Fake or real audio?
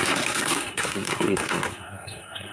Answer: fake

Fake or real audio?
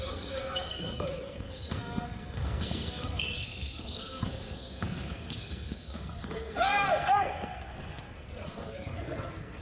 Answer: fake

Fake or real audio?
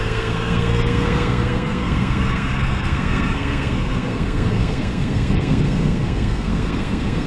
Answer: fake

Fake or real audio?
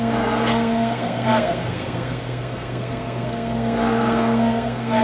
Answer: fake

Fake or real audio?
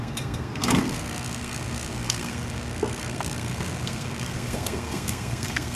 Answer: fake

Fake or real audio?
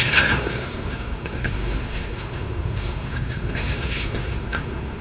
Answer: fake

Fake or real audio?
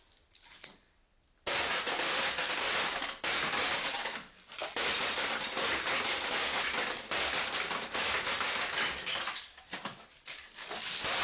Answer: real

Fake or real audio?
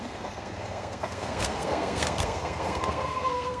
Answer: fake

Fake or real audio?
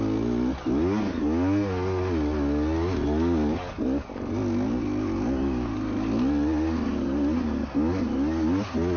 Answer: real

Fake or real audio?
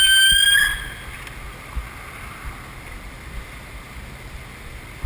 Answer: real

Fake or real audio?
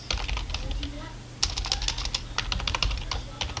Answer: real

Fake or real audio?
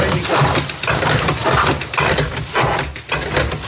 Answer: real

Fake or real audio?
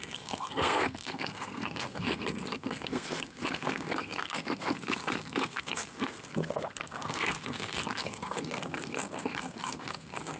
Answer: fake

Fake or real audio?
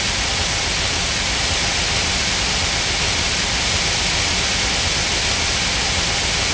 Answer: real